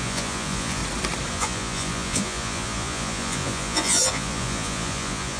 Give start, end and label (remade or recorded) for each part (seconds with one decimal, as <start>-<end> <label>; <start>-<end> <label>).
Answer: 0.0-0.8 remade; 0.8-1.3 recorded; 1.3-5.4 remade